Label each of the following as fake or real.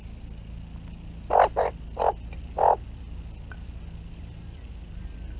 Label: real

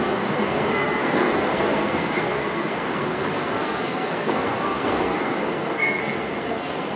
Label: fake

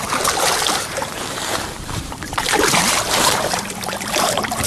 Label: fake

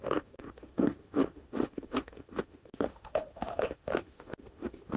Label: fake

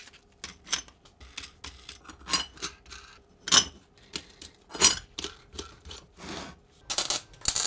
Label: real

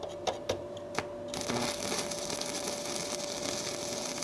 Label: real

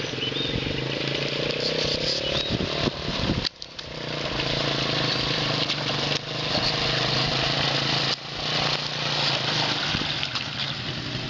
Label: real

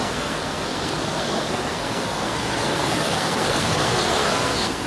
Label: fake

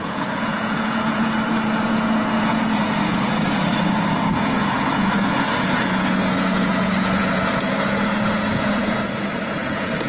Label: fake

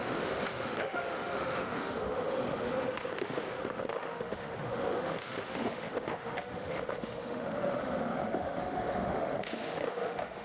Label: fake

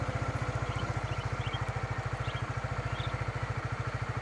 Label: real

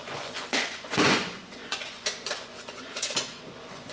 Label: fake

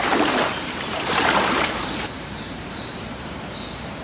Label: fake